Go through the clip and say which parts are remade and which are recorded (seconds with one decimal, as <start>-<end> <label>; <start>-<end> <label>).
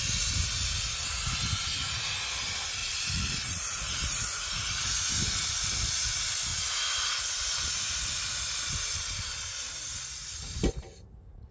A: 0.0-2.8 recorded; 2.8-5.1 remade; 5.1-6.5 recorded; 6.5-8.1 remade; 8.1-11.5 recorded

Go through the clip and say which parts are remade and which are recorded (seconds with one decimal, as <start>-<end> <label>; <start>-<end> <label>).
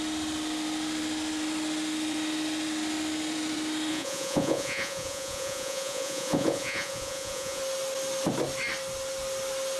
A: 0.0-3.9 recorded; 3.9-7.6 remade; 7.6-9.8 recorded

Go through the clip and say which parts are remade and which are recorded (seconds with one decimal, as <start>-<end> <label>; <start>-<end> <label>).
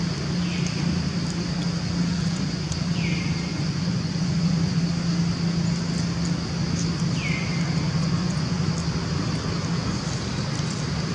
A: 0.0-2.1 recorded; 2.1-3.0 remade; 3.0-3.5 recorded; 3.5-4.8 remade; 4.8-8.0 recorded; 8.0-8.7 remade; 8.7-11.1 recorded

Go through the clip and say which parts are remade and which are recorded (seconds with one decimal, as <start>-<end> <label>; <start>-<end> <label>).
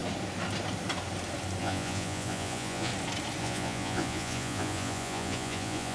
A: 0.0-1.6 recorded; 1.6-2.9 remade; 2.9-3.4 recorded; 3.4-5.9 remade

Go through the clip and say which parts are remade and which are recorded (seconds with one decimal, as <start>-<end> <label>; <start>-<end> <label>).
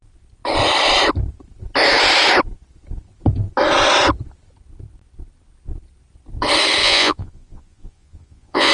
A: 0.0-6.8 recorded; 6.8-8.7 remade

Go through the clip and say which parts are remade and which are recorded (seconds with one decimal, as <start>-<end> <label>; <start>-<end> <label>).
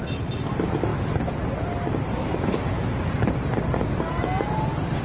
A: 0.0-5.0 recorded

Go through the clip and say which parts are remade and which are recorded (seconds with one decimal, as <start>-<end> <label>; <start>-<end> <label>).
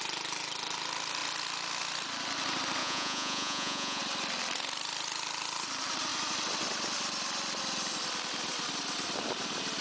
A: 0.0-2.8 recorded; 2.8-4.0 remade; 4.0-9.8 recorded